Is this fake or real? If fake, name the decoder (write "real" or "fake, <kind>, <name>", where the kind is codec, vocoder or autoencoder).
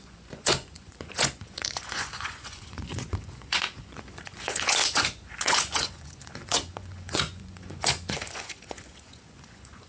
fake, vocoder, Vocos